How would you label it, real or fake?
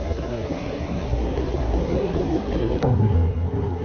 fake